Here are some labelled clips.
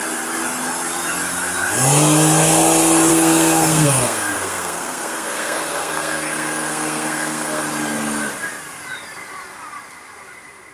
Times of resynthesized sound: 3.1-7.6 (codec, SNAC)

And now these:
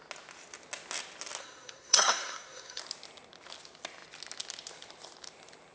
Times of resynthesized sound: 1.4-2.8 (codec, SNAC)

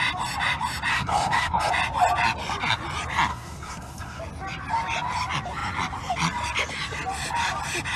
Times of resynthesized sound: 0.9-1.7 (codec, SNAC); 3.3-4.2

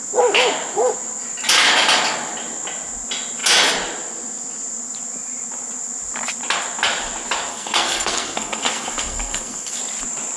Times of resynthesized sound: 7.5-9.8 (codec, SNAC)